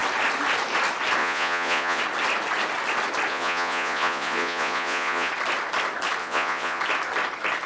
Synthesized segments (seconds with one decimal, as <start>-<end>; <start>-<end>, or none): 1.2-2.0; 3.3-5.3; 6.2-6.8